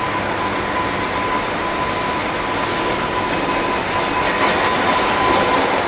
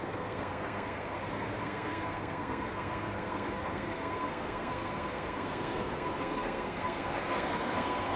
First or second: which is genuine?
first